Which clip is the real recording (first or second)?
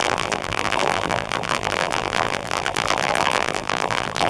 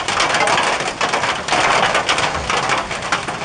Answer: second